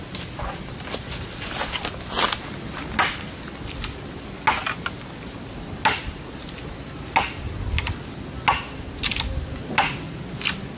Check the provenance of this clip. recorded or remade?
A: recorded